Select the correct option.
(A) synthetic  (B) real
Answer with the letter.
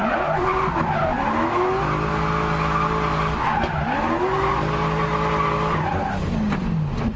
B